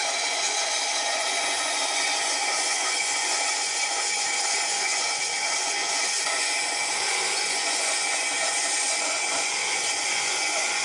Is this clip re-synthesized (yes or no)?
yes